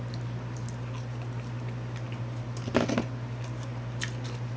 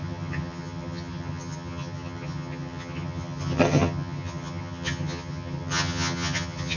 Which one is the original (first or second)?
first